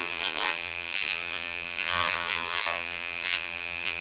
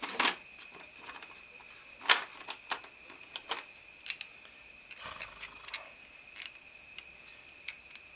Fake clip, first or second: first